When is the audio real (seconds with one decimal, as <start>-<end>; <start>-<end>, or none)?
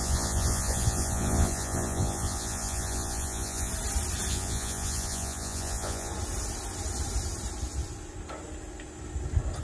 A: 3.7-4.3; 6.1-9.6